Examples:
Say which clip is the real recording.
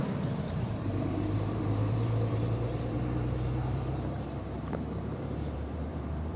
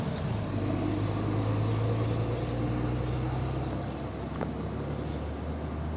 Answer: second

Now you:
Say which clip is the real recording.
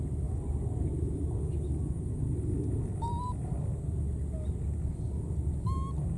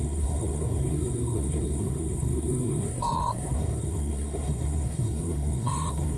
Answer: first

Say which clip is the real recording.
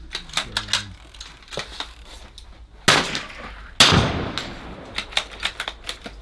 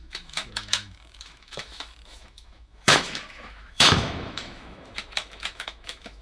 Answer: first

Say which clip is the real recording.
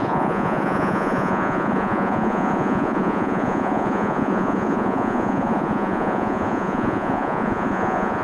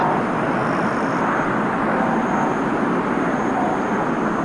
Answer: second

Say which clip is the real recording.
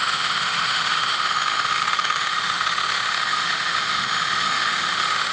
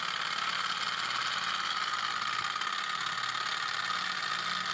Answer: second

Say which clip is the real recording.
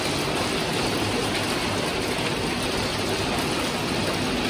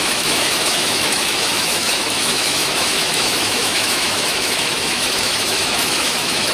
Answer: first